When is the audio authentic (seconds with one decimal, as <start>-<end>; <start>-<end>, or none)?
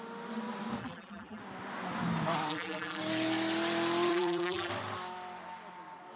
0.0-0.8; 1.4-2.5; 3.0-4.1; 4.7-6.2